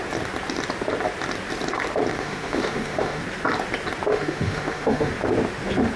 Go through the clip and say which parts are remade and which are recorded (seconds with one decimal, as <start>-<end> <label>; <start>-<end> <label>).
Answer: 0.0-2.1 recorded; 2.1-3.2 remade; 3.2-4.1 recorded; 4.1-5.1 remade; 5.1-6.0 recorded